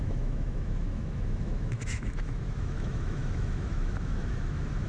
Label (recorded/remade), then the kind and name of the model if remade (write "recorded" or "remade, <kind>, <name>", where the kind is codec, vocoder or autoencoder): remade, autoencoder, DAC-VAE